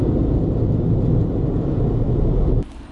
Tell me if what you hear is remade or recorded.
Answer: recorded